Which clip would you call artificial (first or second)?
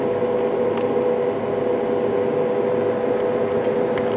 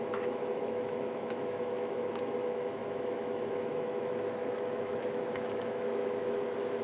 second